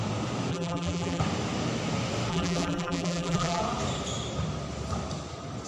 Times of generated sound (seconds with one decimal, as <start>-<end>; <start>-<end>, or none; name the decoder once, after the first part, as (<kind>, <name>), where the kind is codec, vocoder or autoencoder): 0.5-1.2 (vocoder, BigVGAN v2); 2.3-3.6